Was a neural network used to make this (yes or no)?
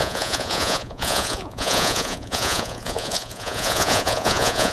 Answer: yes